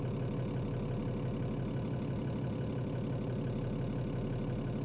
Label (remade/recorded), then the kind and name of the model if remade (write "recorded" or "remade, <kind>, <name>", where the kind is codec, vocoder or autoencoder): recorded